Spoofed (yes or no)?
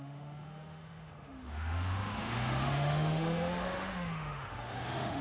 yes